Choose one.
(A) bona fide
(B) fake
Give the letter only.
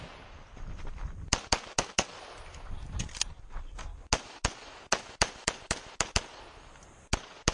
A